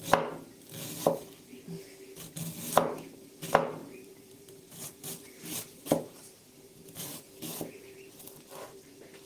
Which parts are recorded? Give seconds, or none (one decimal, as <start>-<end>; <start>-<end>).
0.0-3.8; 7.2-9.3